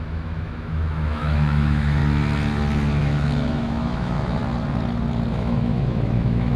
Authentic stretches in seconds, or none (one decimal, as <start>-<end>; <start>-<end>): 2.0-3.0; 4.4-5.3